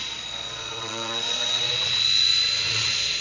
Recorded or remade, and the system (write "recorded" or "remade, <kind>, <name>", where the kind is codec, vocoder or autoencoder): remade, vocoder, Vocos